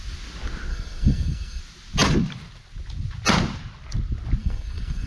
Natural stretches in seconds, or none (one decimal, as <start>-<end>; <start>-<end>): 0.0-0.7; 1.6-4.4